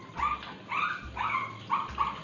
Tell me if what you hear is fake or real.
real